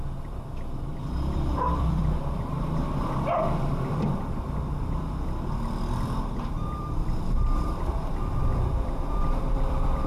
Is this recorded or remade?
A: remade